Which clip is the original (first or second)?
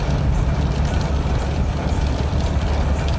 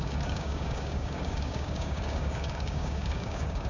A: first